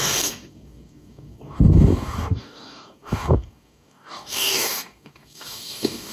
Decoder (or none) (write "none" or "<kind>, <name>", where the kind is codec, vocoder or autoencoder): codec, DAC